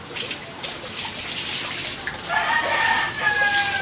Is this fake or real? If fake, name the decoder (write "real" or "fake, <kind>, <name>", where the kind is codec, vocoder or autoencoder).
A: real